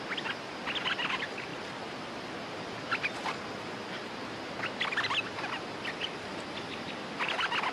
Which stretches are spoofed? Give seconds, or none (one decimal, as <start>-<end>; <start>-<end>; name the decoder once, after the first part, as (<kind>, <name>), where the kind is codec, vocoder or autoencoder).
none